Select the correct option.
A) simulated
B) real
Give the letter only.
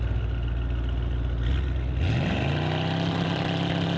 B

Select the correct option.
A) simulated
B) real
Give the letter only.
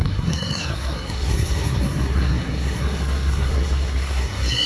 A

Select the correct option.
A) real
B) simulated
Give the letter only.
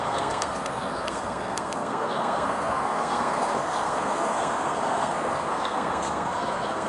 B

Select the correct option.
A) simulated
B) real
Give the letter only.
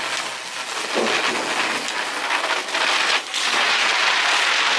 B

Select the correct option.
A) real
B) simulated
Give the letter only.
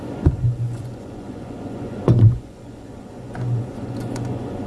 B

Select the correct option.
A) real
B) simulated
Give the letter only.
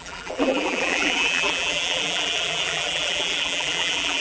B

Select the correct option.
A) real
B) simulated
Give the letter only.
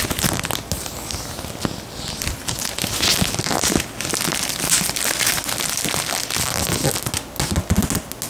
A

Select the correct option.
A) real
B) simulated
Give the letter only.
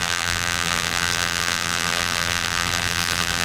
B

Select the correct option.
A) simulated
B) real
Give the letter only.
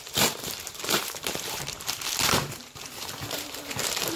A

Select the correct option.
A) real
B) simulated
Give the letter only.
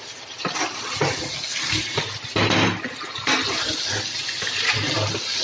A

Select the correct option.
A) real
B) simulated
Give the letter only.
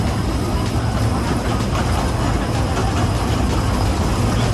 A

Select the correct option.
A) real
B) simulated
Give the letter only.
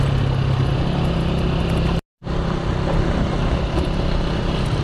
A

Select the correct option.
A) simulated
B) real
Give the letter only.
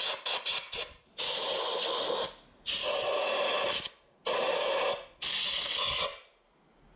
B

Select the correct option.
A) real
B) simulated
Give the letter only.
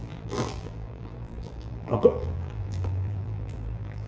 B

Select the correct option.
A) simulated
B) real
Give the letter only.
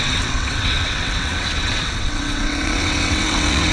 A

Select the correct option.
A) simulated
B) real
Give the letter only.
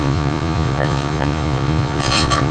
A